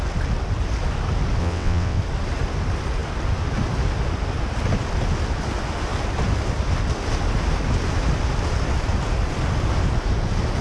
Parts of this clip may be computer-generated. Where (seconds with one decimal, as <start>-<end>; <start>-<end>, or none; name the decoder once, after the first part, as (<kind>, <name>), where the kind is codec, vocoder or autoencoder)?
1.4-2.0 (vocoder, WaveNeXt)